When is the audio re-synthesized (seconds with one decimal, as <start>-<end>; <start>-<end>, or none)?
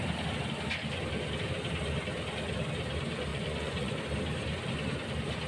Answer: 3.3-4.0